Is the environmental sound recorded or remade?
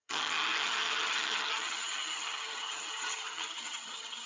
remade